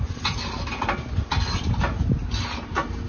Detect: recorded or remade recorded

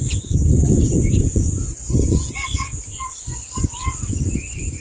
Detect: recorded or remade remade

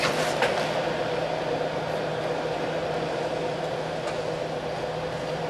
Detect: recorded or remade recorded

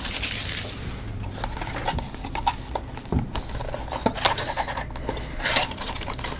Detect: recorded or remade remade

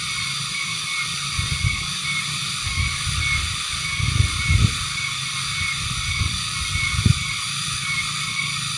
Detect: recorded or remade recorded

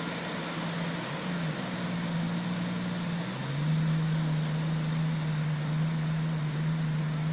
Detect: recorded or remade recorded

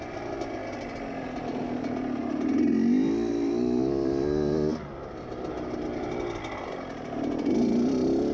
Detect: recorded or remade recorded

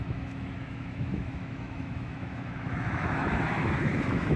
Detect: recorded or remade remade